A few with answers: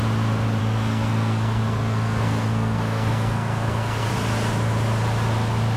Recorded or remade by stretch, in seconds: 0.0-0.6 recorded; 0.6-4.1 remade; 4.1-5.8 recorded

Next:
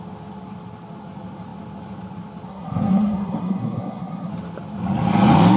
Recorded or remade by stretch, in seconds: 0.0-2.5 recorded; 2.5-4.3 remade; 4.3-5.6 recorded

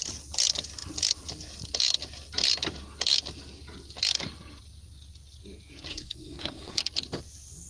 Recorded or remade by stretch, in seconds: 0.0-5.9 recorded; 5.9-6.8 remade; 6.8-7.7 recorded

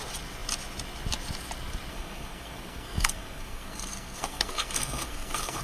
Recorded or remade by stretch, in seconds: 0.0-1.9 recorded; 1.9-5.6 remade